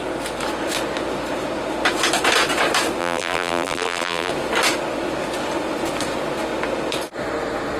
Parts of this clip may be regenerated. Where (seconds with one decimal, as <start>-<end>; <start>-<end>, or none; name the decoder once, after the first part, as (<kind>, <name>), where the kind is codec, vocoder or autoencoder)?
3.0-4.3 (vocoder, BigVGAN v2)